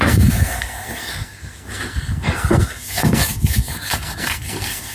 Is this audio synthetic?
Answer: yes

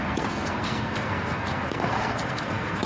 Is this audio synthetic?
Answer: yes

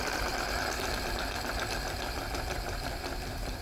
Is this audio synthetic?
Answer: no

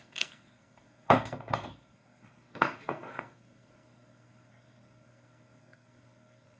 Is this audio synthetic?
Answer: yes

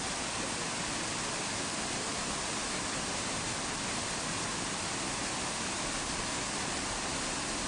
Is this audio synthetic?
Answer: no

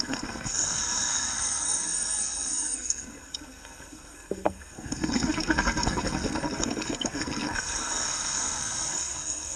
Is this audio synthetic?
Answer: yes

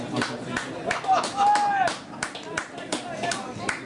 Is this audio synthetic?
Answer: no